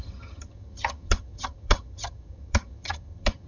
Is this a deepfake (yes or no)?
yes